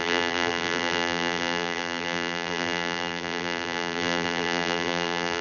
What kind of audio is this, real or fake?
fake